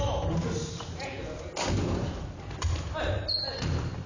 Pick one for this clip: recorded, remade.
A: recorded